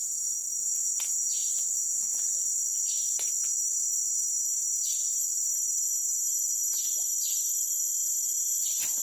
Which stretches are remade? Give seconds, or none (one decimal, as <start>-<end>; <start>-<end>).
none